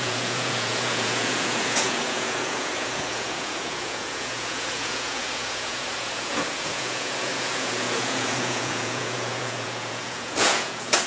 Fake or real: fake